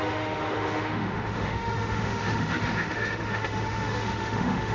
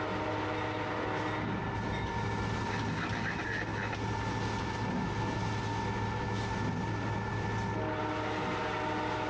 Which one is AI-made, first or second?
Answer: first